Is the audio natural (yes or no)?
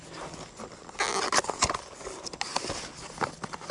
yes